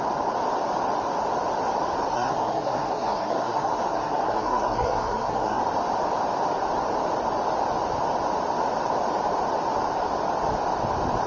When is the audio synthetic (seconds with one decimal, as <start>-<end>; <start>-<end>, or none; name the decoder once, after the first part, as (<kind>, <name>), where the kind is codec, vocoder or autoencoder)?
2.1-5.6 (codec, SNAC)